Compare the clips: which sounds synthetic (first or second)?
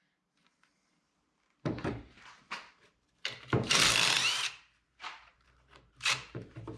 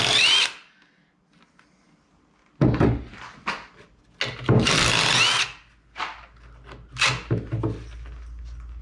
first